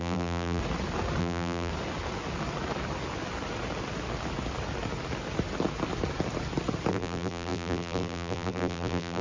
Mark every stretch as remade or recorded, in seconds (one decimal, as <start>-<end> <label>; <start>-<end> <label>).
0.0-0.6 remade; 0.6-1.2 recorded; 1.2-1.7 remade; 1.7-6.9 recorded; 6.9-9.2 remade